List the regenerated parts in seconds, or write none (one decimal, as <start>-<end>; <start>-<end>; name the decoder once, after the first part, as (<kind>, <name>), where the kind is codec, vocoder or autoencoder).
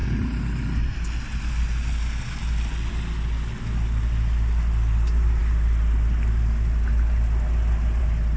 none